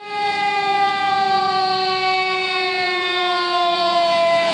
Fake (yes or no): yes